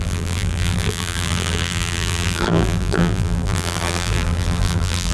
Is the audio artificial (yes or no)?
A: yes